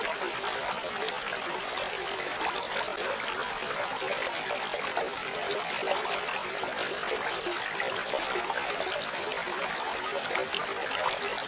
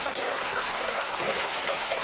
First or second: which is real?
first